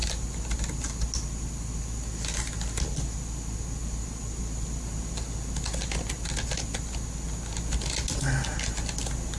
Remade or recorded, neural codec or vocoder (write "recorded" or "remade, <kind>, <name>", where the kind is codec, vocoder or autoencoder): recorded